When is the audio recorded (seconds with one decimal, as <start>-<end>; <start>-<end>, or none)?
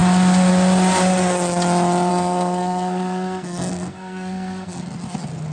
0.0-2.1; 4.8-5.5